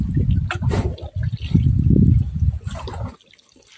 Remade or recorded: recorded